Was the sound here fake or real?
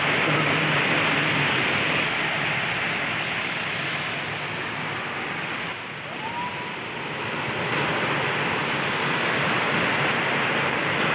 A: real